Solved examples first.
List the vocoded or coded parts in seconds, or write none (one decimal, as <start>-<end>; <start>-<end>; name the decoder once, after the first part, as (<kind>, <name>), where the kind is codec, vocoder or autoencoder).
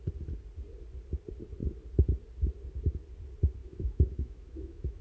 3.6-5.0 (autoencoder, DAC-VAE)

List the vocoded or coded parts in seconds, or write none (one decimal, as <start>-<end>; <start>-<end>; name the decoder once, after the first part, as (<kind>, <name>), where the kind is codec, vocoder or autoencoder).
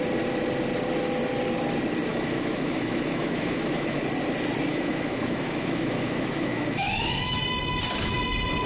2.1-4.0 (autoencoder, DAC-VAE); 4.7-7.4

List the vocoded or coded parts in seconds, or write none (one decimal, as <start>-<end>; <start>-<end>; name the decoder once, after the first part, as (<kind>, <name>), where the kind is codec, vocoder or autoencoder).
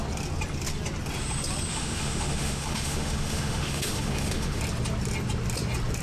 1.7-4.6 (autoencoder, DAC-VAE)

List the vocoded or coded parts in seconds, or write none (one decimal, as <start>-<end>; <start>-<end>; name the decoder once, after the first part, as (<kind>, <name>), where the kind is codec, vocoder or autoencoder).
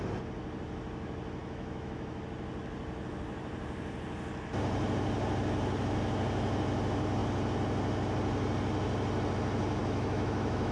1.4-2.2 (autoencoder, DAC-VAE); 9.8-10.7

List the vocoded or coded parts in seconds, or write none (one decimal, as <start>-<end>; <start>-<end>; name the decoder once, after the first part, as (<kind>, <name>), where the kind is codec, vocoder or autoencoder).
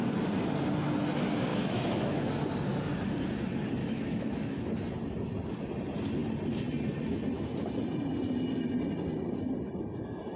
1.5-2.3 (autoencoder, DAC-VAE); 3.8-4.7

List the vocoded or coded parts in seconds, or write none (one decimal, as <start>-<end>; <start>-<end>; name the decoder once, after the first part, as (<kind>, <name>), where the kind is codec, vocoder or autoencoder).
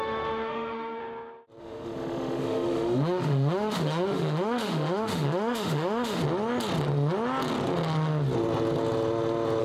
0.0-1.0 (autoencoder, DAC-VAE); 1.6-6.2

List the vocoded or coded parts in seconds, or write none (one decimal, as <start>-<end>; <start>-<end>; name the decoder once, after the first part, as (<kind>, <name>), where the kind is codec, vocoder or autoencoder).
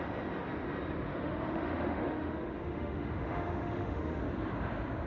1.1-4.2 (autoencoder, DAC-VAE)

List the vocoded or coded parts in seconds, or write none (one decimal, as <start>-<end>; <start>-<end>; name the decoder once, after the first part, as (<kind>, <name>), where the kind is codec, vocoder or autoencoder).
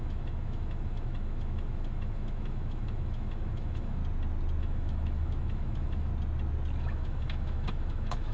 0.0-4.0 (autoencoder, DAC-VAE); 4.6-6.1; 6.8-8.3